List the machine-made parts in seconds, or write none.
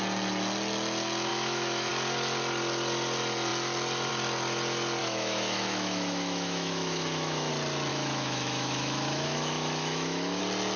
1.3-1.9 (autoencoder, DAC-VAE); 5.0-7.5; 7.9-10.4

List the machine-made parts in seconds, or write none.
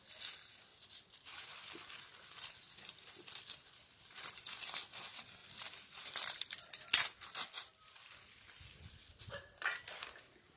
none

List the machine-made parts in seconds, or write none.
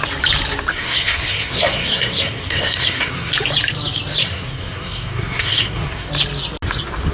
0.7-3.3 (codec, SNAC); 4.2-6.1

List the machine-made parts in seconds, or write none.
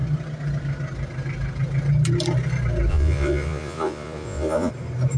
2.9-4.7 (vocoder, Vocos)